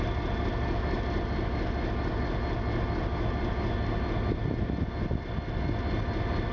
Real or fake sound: real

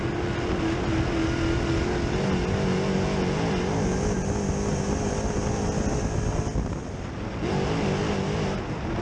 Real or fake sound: real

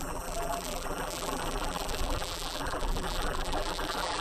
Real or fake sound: fake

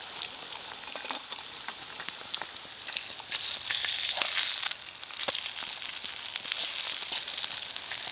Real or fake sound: real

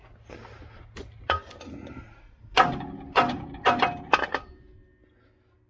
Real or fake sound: real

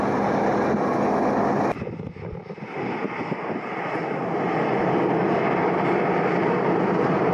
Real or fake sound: real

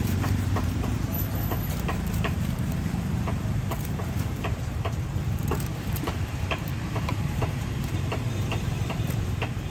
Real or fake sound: fake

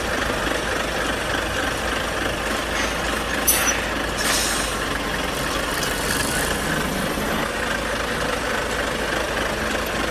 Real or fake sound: real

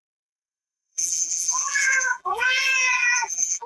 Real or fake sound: fake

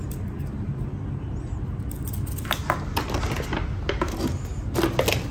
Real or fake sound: real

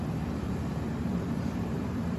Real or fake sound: fake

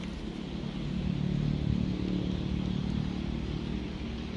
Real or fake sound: real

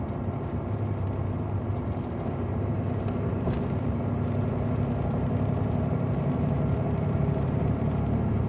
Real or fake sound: fake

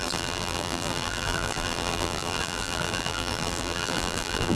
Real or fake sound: fake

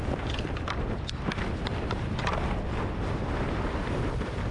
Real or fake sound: fake